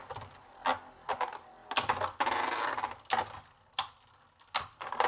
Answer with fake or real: real